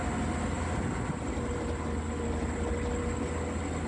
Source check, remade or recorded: recorded